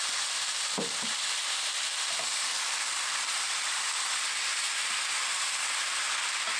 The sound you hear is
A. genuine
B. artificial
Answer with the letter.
A